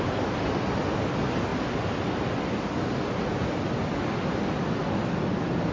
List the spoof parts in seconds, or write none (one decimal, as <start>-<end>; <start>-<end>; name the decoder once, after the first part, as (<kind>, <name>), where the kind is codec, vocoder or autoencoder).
none